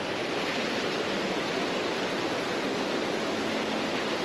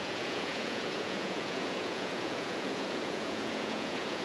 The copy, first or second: second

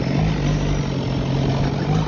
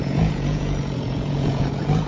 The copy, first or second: second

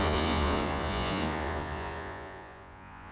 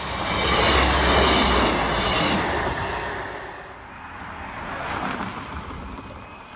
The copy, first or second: first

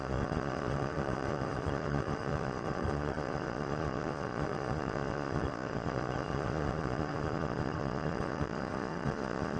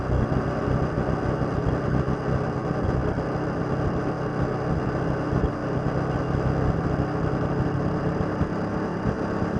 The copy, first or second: first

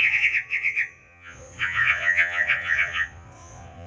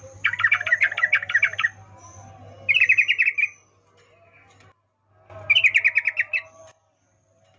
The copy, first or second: first